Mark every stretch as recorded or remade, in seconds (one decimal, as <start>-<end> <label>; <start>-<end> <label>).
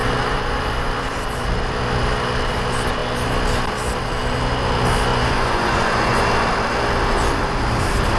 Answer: 0.0-5.1 recorded; 5.1-6.2 remade; 6.2-8.2 recorded